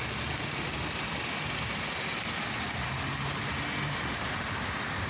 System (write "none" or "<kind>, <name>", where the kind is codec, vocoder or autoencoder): none